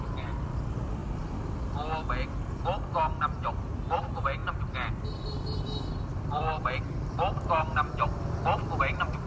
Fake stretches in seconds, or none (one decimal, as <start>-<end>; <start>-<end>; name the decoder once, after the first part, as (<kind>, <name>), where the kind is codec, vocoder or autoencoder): 0.0-1.0 (vocoder, BigVGAN v2); 2.9-9.3